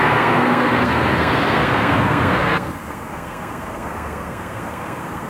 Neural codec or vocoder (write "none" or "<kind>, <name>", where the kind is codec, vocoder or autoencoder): codec, SNAC